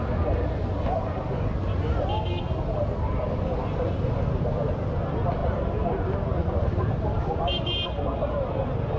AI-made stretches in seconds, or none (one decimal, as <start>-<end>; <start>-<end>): 5.4-7.7

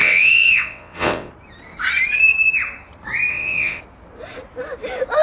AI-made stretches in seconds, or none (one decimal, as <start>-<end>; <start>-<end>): 0.0-1.3; 3.3-3.8

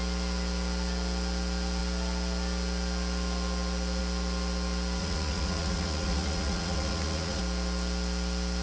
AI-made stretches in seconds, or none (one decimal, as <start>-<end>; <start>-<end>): 5.0-7.4

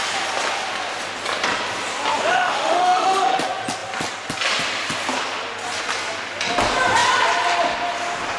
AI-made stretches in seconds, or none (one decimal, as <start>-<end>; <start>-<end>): 2.3-3.4

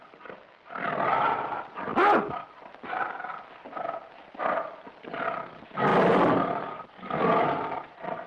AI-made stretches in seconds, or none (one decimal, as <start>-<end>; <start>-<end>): none

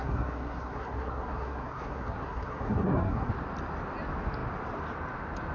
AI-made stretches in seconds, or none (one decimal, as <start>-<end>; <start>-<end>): 0.0-3.3